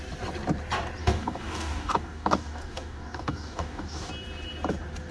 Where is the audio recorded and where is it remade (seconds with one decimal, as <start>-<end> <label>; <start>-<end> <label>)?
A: 0.0-1.0 recorded; 1.0-4.1 remade; 4.1-5.1 recorded